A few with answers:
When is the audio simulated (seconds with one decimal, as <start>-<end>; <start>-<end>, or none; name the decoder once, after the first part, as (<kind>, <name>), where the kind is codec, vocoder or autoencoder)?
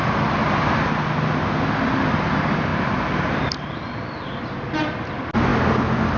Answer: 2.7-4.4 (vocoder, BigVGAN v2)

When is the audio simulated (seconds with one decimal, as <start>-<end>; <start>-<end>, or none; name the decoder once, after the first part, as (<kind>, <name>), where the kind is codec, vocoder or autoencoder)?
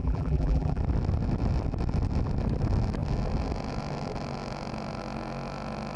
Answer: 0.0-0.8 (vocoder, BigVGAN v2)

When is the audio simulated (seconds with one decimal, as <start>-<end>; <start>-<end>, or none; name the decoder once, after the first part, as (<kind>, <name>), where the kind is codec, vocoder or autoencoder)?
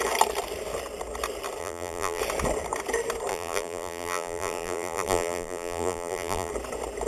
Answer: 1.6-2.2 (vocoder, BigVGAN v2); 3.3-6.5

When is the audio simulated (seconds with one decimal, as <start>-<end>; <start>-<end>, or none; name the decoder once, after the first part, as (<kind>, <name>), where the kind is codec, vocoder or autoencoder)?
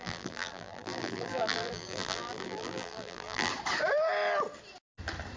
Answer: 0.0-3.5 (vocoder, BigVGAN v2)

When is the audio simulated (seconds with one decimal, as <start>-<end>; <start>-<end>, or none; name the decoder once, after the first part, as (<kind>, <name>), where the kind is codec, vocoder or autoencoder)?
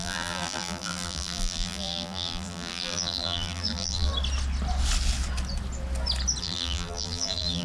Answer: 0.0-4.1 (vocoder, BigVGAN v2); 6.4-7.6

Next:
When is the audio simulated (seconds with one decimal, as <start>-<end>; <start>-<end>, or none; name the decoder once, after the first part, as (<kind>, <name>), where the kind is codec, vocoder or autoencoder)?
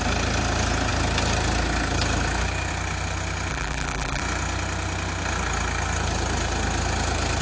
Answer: 3.5-4.2 (vocoder, BigVGAN v2)